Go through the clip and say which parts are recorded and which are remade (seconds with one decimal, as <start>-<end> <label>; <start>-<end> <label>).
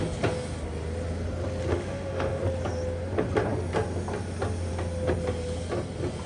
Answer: 0.0-1.7 recorded; 1.7-2.4 remade; 2.4-6.3 recorded